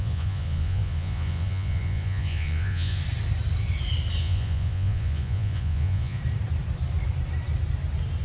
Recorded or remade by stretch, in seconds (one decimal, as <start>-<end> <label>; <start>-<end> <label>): 0.0-3.0 remade; 3.0-4.2 recorded; 4.2-6.2 remade; 6.2-8.2 recorded